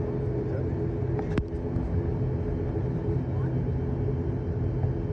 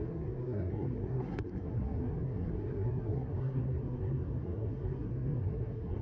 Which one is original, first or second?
first